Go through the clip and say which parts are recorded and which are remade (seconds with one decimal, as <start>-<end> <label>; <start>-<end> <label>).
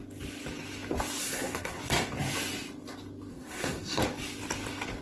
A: 0.0-1.2 recorded; 1.2-1.8 remade; 1.8-3.3 recorded; 3.3-4.0 remade; 4.0-5.0 recorded